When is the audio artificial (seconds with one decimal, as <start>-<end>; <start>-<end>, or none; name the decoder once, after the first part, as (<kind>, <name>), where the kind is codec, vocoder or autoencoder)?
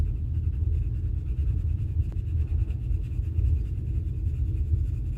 1.4-2.2 (vocoder, BigVGAN v2)